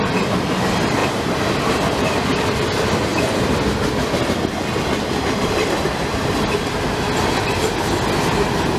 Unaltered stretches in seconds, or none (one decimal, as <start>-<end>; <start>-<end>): 0.0-1.0; 2.2-8.8